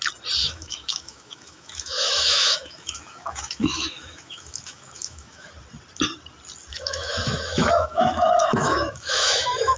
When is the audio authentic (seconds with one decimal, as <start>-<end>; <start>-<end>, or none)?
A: 0.0-0.4; 5.5-6.7